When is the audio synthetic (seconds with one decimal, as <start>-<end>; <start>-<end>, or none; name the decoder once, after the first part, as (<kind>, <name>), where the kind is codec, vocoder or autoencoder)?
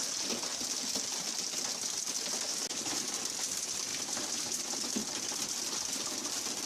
none